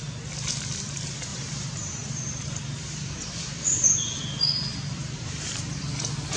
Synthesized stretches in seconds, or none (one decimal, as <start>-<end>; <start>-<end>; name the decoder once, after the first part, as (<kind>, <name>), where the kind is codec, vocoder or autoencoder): 1.3-3.9 (vocoder, BigVGAN v2); 5.0-5.7